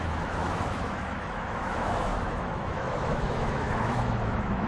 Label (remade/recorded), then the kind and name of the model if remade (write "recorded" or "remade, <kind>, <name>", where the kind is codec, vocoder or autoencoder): remade, autoencoder, DAC-VAE